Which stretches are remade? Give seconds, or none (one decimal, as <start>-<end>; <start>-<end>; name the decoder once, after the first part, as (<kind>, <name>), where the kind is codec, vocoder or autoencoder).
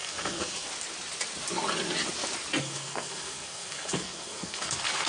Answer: 0.0-0.7 (codec, SNAC); 2.6-5.1